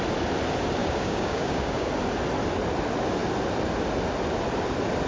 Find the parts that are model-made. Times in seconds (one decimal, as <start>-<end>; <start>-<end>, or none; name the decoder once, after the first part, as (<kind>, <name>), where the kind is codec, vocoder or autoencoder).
0.8-1.9 (codec, DAC)